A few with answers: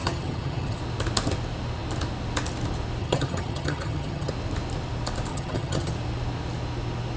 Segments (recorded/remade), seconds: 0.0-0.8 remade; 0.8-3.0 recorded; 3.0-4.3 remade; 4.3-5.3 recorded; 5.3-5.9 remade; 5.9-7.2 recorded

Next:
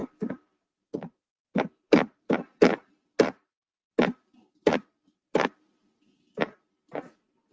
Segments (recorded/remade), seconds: 0.0-2.4 remade; 2.4-4.8 recorded; 4.8-6.0 remade; 6.0-7.5 recorded